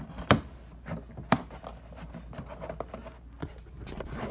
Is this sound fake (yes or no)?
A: no